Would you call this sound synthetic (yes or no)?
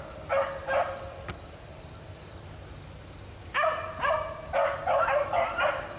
no